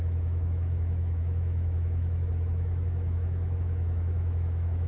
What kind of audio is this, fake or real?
fake